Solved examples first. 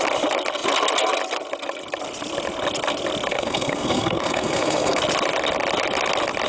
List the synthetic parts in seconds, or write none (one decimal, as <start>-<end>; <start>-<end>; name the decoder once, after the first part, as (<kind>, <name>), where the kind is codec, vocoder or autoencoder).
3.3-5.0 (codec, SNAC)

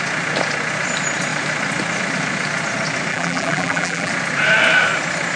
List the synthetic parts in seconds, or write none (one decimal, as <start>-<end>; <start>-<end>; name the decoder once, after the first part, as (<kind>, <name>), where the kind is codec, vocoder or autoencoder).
3.1-4.1 (vocoder, BigVGAN v2)

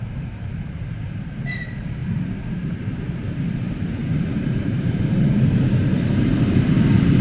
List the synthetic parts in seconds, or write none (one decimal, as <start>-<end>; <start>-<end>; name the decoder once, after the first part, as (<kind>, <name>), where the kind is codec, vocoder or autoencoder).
0.0-2.0 (vocoder, BigVGAN v2); 2.5-7.2

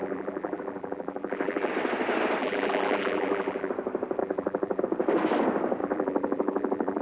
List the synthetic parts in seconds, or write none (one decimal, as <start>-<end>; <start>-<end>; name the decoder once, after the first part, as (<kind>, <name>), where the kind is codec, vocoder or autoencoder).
0.0-1.7 (vocoder, BigVGAN v2); 2.4-3.7; 4.2-4.8; 5.8-7.0

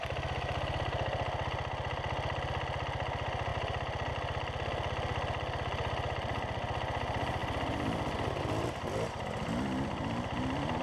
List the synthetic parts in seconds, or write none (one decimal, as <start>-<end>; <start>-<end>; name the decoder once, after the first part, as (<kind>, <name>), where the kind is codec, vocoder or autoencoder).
3.5-4.1 (vocoder, BigVGAN v2)

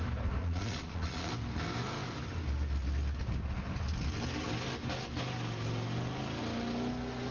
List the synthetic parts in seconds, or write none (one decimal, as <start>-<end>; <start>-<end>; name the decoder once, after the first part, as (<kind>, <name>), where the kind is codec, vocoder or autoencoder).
0.4-1.3 (vocoder, Vocos)

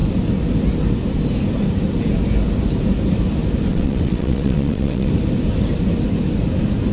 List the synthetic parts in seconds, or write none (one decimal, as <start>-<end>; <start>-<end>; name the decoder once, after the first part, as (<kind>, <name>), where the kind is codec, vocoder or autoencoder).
3.7-5.1 (vocoder, WaveNeXt)